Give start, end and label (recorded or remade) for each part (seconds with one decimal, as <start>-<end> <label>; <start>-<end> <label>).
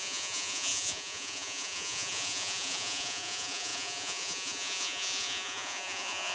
0.0-6.3 remade